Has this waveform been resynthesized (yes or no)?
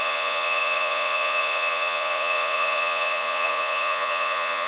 yes